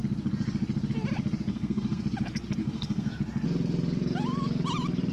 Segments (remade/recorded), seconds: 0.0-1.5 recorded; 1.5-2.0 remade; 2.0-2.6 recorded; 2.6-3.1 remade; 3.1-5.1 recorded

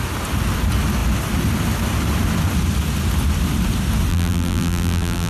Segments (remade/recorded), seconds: 0.0-4.1 recorded; 4.1-5.3 remade

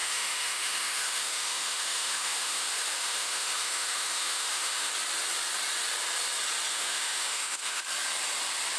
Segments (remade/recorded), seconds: 0.0-4.9 remade; 4.9-6.7 recorded; 6.7-7.8 remade; 7.8-8.8 recorded

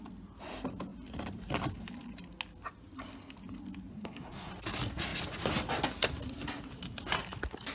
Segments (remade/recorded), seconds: 0.0-3.9 recorded; 3.9-4.5 remade; 4.5-7.7 recorded

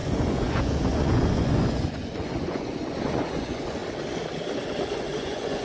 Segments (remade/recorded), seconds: 0.0-3.8 remade; 3.8-4.9 recorded; 4.9-5.6 remade